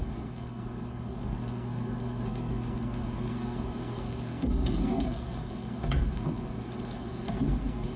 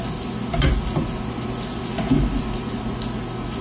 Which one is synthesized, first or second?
first